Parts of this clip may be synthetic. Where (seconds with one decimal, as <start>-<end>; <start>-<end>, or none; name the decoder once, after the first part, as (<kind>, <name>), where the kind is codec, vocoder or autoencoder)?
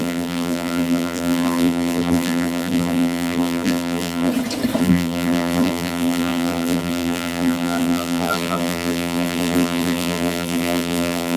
0.0-4.3 (vocoder, BigVGAN v2); 4.8-11.4